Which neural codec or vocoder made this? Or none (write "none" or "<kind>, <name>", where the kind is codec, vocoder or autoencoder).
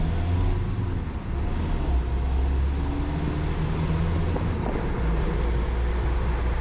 none